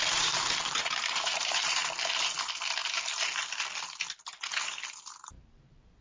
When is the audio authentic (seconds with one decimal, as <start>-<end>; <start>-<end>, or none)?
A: 1.8-2.4; 2.8-4.1; 4.5-5.3